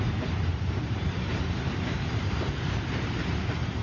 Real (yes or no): no